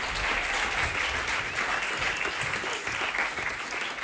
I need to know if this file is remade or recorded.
recorded